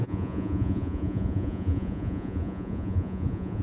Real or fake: fake